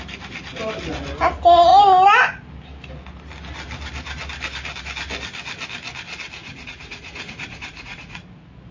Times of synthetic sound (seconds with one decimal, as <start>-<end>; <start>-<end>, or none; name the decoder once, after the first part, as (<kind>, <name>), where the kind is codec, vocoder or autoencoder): 6.4-8.2 (vocoder, Vocos)